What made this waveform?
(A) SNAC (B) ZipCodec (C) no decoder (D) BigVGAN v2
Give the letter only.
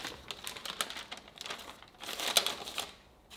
C